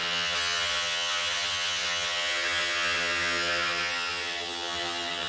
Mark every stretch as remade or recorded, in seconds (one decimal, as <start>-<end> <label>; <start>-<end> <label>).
0.0-5.3 remade